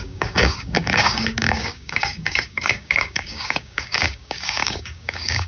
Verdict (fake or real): fake